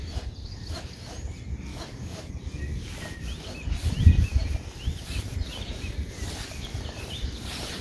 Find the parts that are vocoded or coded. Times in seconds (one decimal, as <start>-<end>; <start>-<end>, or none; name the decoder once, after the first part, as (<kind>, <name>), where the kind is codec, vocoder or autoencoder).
1.7-2.3 (codec, DAC)

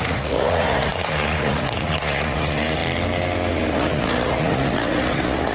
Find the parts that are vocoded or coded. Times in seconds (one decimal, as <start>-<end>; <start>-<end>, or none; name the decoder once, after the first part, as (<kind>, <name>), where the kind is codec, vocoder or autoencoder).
0.0-2.8 (vocoder, Vocos); 3.5-5.5

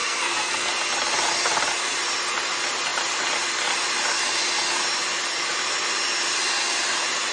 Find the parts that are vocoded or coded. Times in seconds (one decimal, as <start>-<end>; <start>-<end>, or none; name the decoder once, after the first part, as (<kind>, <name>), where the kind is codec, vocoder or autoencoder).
0.0-0.7 (codec, SNAC)

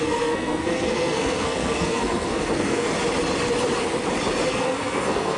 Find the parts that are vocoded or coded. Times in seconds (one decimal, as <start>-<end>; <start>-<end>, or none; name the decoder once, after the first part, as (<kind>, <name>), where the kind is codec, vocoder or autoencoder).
0.0-2.9 (codec, SNAC); 4.5-5.4

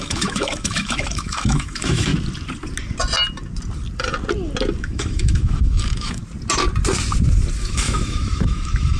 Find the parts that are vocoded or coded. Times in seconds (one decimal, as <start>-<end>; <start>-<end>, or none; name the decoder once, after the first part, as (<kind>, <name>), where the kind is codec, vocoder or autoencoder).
0.0-2.1 (autoencoder, DAC-VAE); 4.8-6.2; 7.6-9.0